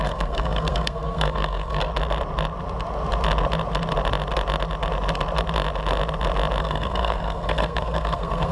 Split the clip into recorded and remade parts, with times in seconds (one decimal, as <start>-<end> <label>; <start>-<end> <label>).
0.0-1.9 remade; 1.9-6.6 recorded; 6.6-8.5 remade